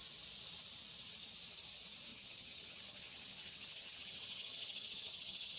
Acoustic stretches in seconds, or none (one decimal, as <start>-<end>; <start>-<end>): 0.0-2.1